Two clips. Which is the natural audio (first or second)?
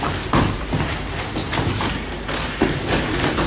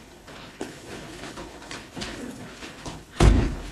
first